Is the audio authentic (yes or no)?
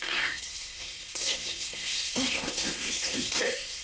no